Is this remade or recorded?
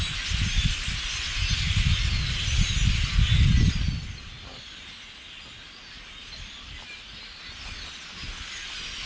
recorded